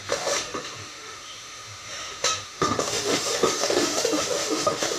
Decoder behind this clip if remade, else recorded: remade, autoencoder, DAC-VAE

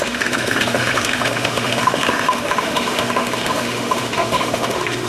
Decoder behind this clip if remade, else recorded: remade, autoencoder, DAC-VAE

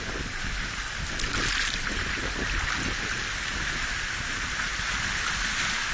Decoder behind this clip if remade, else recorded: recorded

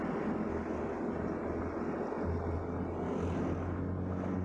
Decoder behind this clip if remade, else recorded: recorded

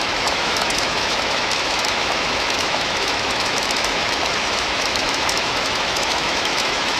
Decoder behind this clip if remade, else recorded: remade, autoencoder, DAC-VAE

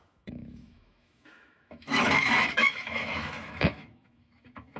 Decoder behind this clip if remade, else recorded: remade, autoencoder, DAC-VAE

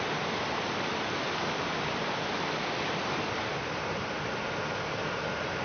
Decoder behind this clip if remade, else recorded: recorded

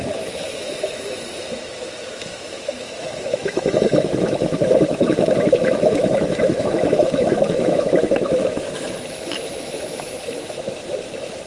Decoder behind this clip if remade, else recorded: remade, autoencoder, DAC-VAE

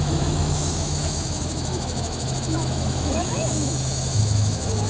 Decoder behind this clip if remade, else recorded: remade, autoencoder, DAC-VAE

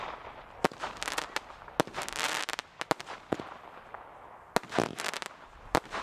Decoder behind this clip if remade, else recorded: recorded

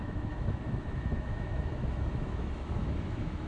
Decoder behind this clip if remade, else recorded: remade, autoencoder, DAC-VAE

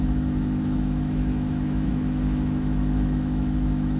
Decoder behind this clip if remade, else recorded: remade, autoencoder, DAC-VAE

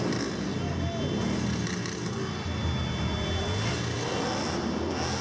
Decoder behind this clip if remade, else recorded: recorded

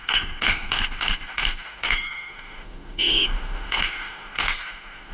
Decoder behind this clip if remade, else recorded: remade, autoencoder, DAC-VAE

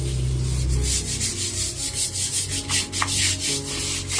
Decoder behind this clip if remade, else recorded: recorded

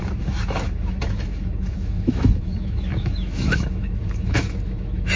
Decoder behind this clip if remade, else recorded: remade, autoencoder, DAC-VAE